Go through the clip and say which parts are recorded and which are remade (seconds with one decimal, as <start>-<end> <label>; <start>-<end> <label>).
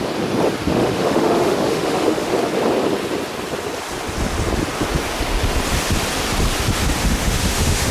0.0-0.7 recorded; 0.7-2.3 remade; 2.3-7.0 recorded; 7.0-7.9 remade